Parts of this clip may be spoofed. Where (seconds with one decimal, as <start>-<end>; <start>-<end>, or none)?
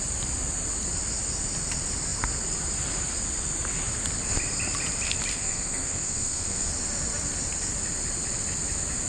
5.3-6.7